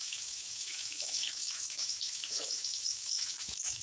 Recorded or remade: remade